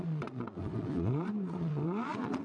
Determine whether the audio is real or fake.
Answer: fake